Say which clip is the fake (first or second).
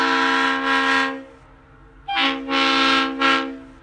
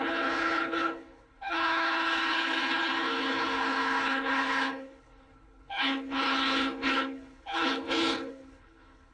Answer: second